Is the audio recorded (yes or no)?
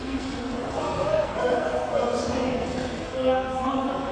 no